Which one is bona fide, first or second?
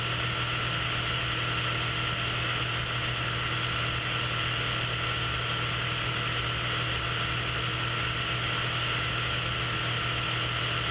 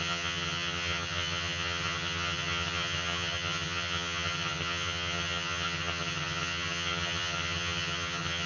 first